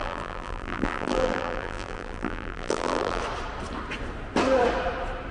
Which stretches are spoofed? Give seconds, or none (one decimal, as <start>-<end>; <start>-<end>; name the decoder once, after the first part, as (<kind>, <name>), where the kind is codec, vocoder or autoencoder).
0.0-3.2 (vocoder, BigVGAN v2)